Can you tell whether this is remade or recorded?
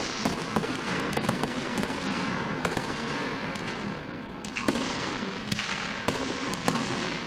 remade